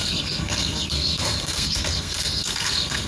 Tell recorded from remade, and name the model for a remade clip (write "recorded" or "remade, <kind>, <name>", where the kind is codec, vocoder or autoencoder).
remade, codec, SNAC